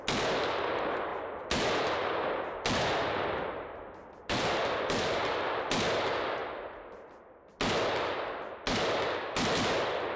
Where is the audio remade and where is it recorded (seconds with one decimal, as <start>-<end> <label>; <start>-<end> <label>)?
0.0-10.2 recorded